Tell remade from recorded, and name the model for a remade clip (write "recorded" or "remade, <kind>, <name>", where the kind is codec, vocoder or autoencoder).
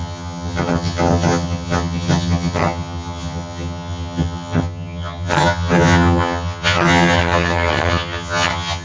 remade, vocoder, HiFi-GAN